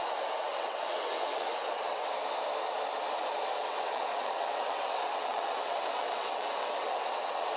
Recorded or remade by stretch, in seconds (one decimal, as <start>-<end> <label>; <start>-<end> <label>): 0.0-0.5 recorded; 0.5-2.1 remade; 2.1-3.6 recorded; 3.6-7.6 remade

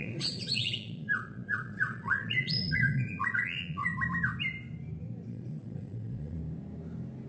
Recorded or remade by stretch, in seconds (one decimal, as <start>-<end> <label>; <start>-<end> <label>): 0.0-3.9 remade; 3.9-5.3 recorded; 5.3-6.4 remade; 6.4-7.3 recorded

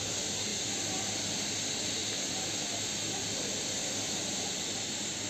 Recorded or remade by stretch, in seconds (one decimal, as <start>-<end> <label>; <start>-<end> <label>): 0.0-5.3 recorded

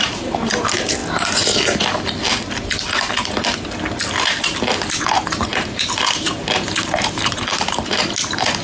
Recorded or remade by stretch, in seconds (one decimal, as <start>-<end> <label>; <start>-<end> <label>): 0.0-1.0 remade; 1.0-5.0 recorded; 5.0-8.6 remade

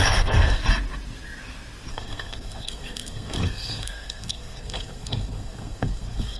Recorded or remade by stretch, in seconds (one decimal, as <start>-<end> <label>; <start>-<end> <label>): 0.0-0.6 remade; 0.6-1.9 recorded; 1.9-6.4 remade